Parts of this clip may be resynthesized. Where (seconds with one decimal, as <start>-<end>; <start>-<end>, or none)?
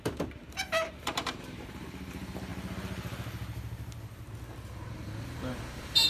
0.0-2.5; 4.2-6.1